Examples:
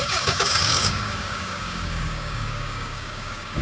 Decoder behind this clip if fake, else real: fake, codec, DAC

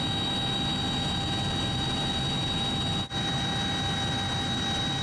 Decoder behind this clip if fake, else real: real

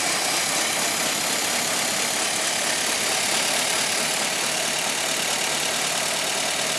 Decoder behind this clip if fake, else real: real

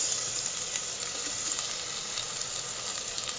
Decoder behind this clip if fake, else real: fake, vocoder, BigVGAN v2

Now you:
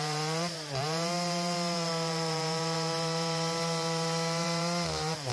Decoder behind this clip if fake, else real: fake, vocoder, BigVGAN v2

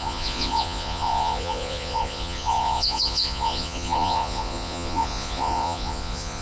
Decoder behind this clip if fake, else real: fake, vocoder, Vocos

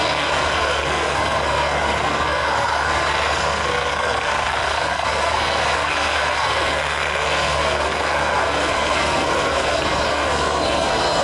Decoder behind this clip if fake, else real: fake, codec, SNAC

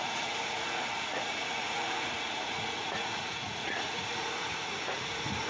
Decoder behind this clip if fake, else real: fake, vocoder, Vocos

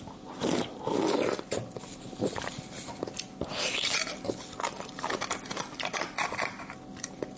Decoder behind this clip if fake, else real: real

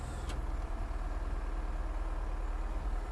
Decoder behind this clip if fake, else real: real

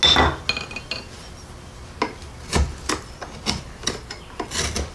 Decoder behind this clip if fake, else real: real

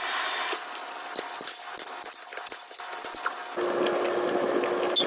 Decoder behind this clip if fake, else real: real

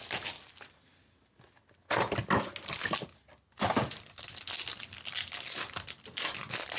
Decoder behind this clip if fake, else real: real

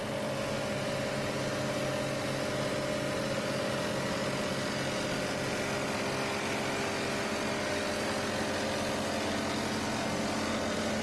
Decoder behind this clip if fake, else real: real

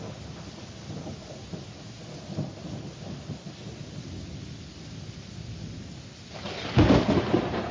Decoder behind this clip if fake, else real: real